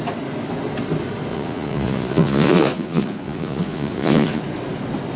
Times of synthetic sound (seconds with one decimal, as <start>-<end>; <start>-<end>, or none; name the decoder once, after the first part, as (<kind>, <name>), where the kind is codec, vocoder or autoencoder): 1.3-4.4 (vocoder, Vocos)